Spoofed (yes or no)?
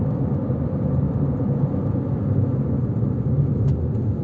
no